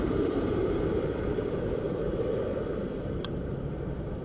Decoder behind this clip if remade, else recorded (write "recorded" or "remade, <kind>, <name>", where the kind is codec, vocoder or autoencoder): remade, vocoder, BigVGAN v2